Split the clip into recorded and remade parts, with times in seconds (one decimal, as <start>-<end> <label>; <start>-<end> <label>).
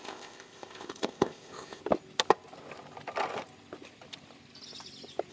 0.0-1.8 remade; 1.8-5.3 recorded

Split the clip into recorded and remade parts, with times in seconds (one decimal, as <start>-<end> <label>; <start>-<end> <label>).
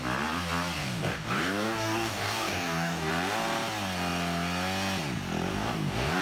0.0-0.8 recorded; 0.8-3.1 remade; 3.1-5.5 recorded; 5.5-6.2 remade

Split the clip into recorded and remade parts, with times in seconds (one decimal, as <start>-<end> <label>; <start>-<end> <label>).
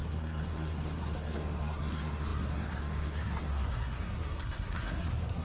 0.0-5.4 remade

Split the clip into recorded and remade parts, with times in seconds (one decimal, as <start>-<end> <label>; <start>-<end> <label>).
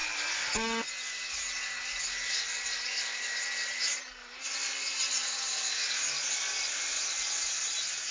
0.0-8.1 recorded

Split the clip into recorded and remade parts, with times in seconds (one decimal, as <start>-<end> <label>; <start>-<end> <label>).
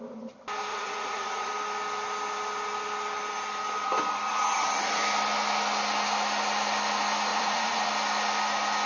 0.0-0.7 recorded; 0.7-1.5 remade; 1.5-7.3 recorded; 7.3-7.9 remade; 7.9-8.9 recorded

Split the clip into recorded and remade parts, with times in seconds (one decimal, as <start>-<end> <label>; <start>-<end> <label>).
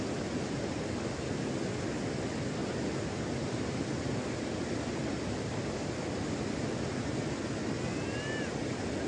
0.0-9.1 recorded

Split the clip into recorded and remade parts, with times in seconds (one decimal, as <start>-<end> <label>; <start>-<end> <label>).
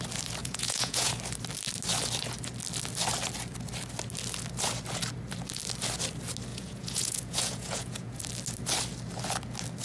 0.0-0.4 recorded; 0.4-1.1 remade; 1.1-6.5 recorded; 6.5-8.2 remade; 8.2-9.8 recorded